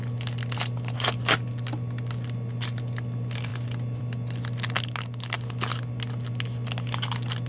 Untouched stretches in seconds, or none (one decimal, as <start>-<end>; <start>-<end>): 0.0-7.5

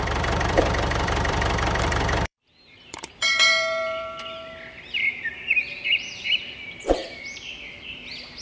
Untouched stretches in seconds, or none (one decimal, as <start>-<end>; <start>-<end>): 7.0-8.4

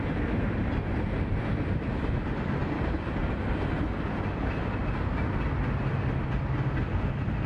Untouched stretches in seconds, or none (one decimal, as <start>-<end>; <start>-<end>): 0.0-7.5

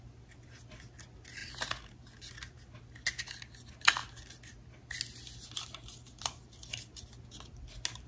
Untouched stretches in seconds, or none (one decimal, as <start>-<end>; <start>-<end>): 0.0-8.1